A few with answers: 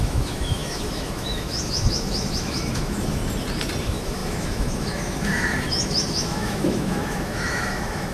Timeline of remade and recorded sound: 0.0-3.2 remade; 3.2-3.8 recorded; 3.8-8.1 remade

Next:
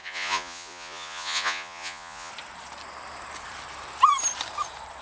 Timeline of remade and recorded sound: 0.0-2.3 remade; 2.3-5.0 recorded

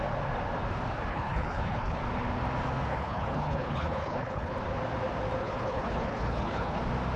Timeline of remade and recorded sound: 0.0-1.1 recorded; 1.1-2.0 remade; 2.0-2.9 recorded; 2.9-4.5 remade; 4.5-5.4 recorded; 5.4-6.8 remade; 6.8-7.2 recorded